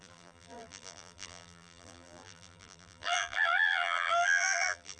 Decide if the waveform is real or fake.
fake